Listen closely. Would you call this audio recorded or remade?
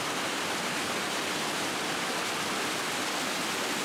recorded